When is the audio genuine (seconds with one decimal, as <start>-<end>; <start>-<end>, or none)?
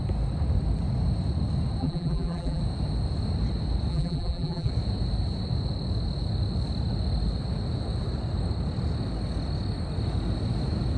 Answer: 0.0-1.8; 2.6-3.9; 4.7-11.0